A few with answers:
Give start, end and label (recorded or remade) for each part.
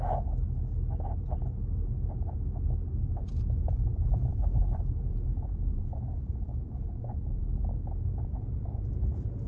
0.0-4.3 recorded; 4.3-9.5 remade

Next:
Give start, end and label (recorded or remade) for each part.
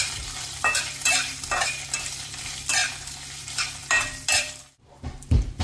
0.0-2.8 remade; 2.8-3.4 recorded; 3.4-3.8 remade; 3.8-4.4 recorded; 4.4-5.6 remade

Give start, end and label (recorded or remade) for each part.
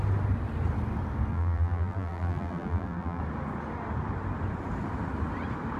0.0-1.3 recorded; 1.3-3.2 remade; 3.2-5.8 recorded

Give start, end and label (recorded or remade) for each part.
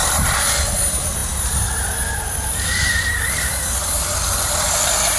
0.0-5.2 recorded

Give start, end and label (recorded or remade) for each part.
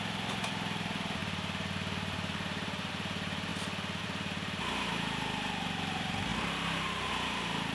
0.0-3.5 remade; 3.5-4.0 recorded; 4.0-7.7 remade